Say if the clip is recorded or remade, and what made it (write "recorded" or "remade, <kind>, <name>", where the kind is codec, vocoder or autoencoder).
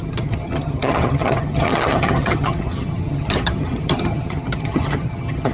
remade, vocoder, HiFi-GAN